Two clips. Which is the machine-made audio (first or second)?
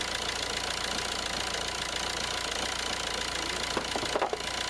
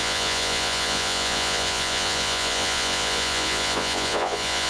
second